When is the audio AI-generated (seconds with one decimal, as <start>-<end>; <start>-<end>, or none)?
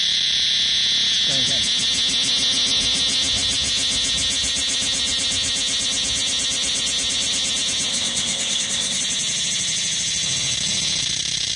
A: 7.9-9.0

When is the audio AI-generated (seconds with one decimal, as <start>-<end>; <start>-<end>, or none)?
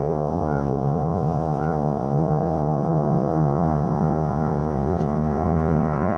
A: 0.0-6.2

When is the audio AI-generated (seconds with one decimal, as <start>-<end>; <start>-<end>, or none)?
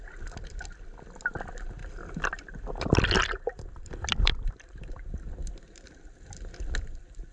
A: 1.8-5.5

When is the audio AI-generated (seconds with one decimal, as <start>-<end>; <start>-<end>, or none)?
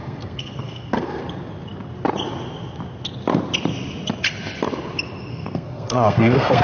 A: 0.0-1.2; 5.3-6.6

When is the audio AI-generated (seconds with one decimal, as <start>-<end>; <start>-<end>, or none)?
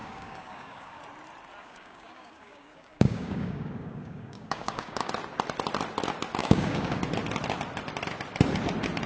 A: 0.0-1.0; 1.6-5.1; 6.4-7.0